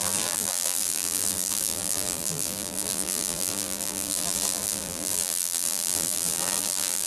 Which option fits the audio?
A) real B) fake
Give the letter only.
B